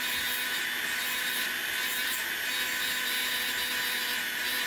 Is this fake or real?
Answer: real